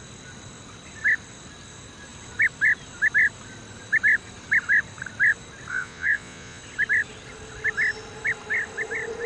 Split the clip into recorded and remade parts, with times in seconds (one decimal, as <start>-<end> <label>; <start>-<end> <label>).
0.0-5.7 recorded; 5.7-6.6 remade; 6.6-9.3 recorded